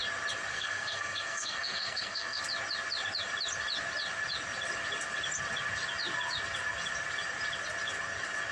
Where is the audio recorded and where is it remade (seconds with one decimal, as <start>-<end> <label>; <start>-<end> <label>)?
0.0-0.5 recorded; 0.5-2.4 remade; 2.4-8.5 recorded